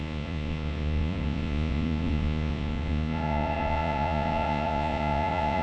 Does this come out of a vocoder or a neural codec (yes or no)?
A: yes